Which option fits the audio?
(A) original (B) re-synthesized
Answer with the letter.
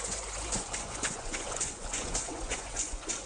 B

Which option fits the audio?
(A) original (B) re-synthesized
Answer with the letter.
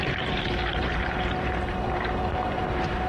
B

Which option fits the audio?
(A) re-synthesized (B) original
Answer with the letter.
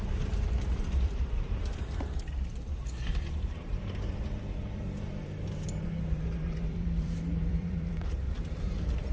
A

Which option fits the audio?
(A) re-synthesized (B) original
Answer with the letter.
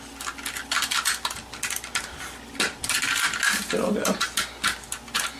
B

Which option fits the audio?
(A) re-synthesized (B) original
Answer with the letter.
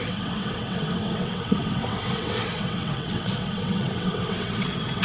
A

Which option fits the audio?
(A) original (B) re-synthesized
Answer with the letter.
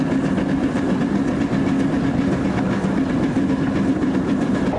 A